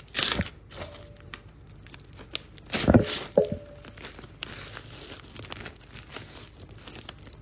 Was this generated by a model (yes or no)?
no